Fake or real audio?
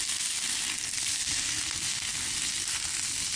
real